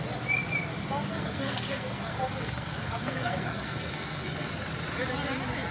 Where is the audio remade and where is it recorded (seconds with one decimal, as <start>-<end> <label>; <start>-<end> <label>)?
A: 0.0-1.1 recorded; 1.1-4.5 remade; 4.5-5.7 recorded